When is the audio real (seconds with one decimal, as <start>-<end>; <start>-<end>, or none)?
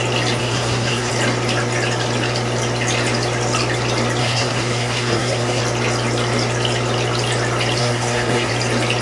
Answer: 0.0-0.4; 1.1-4.2; 5.6-7.8; 8.5-9.0